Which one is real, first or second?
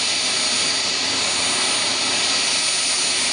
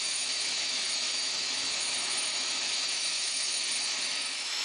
first